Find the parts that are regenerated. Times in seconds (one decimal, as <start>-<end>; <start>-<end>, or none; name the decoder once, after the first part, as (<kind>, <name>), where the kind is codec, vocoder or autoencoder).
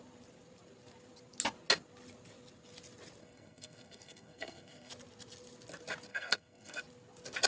3.2-4.9 (codec, SNAC); 6.1-6.8